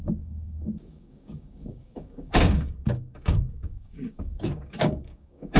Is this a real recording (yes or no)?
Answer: no